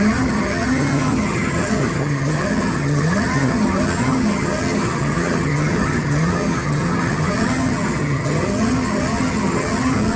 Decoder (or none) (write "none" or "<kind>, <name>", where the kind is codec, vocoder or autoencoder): vocoder, HiFi-GAN